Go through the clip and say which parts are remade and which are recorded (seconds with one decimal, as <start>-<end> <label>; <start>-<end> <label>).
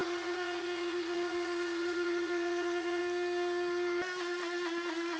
0.0-3.0 remade; 3.0-5.2 recorded